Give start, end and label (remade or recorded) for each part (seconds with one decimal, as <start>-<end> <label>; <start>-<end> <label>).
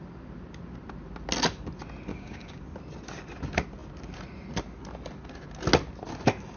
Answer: 0.0-2.1 recorded; 2.1-2.6 remade; 2.6-6.6 recorded